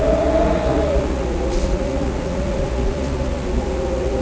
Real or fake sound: fake